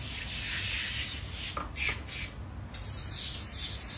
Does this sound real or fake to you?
real